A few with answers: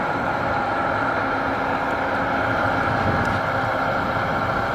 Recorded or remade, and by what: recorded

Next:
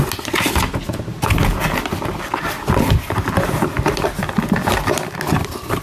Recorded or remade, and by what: recorded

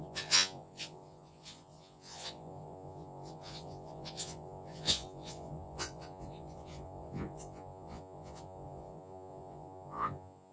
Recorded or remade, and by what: remade, vocoder, Vocos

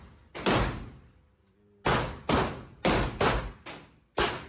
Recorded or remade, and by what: recorded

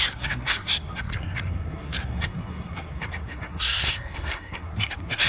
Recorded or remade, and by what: remade, codec, SNAC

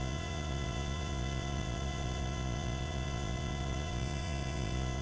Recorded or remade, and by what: remade, vocoder, Vocos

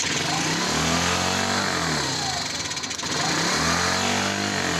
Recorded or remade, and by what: recorded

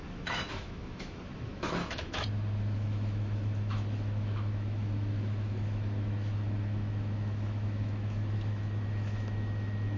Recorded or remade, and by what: remade, autoencoder, DAC-VAE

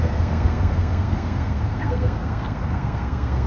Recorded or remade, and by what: remade, codec, SNAC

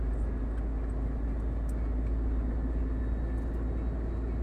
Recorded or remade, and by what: recorded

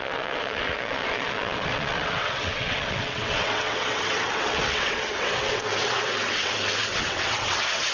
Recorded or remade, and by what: remade, vocoder, WaveNeXt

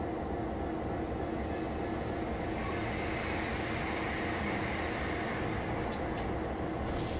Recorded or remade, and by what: recorded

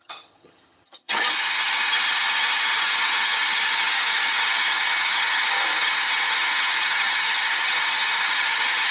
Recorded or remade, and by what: remade, vocoder, HiFi-GAN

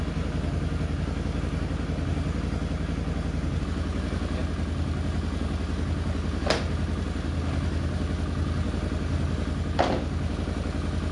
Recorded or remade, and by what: recorded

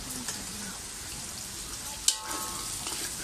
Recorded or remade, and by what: recorded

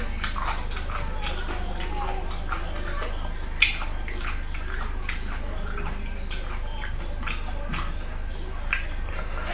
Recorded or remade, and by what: recorded